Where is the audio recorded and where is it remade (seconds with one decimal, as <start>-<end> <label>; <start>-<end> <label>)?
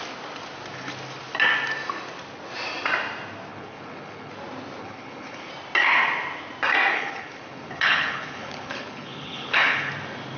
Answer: 0.0-3.5 recorded; 3.5-4.3 remade; 4.3-4.8 recorded; 4.8-5.5 remade; 5.5-6.9 recorded; 6.9-9.9 remade; 9.9-10.4 recorded